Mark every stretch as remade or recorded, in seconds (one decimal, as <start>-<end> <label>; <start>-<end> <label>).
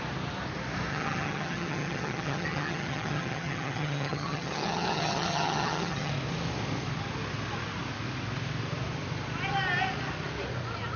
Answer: 0.0-0.9 recorded; 0.9-6.1 remade; 6.1-11.0 recorded